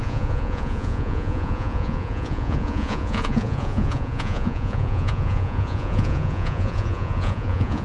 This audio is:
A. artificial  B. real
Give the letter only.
A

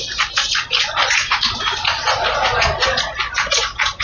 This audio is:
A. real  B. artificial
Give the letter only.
A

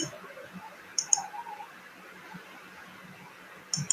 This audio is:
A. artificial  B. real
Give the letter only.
B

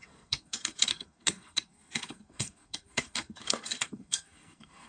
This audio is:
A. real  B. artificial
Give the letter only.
B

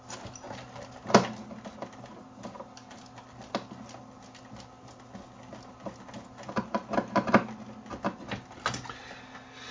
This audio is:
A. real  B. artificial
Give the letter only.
A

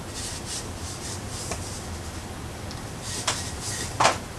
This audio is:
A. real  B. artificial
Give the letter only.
A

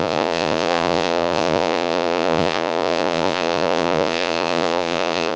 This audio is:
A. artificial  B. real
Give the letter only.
A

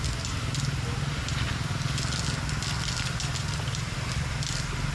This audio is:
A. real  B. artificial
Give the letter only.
A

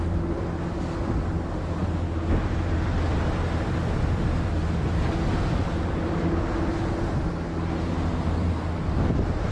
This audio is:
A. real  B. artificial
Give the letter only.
A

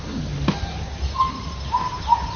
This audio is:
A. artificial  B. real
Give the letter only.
B